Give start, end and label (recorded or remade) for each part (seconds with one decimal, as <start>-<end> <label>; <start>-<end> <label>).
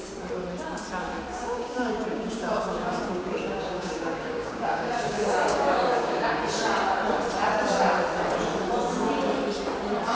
0.0-1.3 recorded; 1.3-6.4 remade; 6.4-10.1 recorded